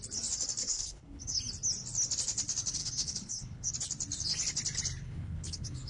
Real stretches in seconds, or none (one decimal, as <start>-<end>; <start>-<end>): 0.0-0.6; 1.4-2.8; 3.7-5.0